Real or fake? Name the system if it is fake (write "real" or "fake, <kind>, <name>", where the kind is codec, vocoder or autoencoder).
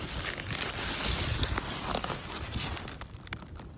real